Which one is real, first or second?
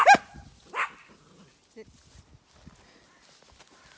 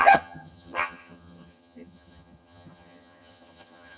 first